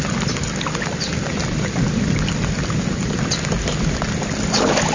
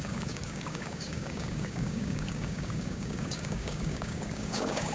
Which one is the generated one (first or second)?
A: second